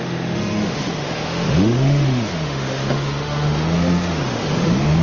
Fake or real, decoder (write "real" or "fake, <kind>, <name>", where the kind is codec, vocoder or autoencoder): fake, autoencoder, DAC-VAE